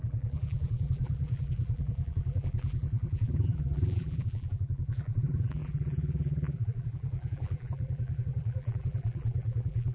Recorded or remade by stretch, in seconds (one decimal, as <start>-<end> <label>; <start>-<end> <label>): 0.0-9.9 remade